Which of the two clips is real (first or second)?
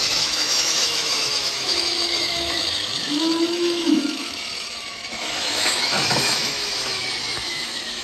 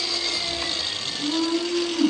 second